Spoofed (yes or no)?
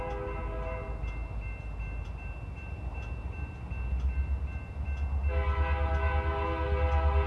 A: no